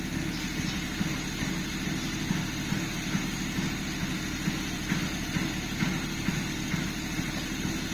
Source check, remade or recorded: recorded